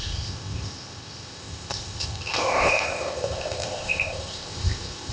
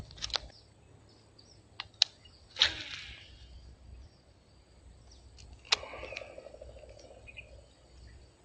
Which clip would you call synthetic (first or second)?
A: first